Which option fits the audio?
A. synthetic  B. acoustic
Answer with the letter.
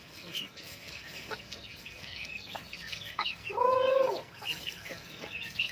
A